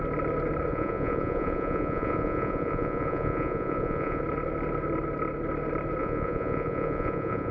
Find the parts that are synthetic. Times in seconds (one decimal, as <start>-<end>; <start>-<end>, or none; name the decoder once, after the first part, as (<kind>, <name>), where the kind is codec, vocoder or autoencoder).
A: 0.7-4.2 (vocoder, Vocos); 6.0-7.5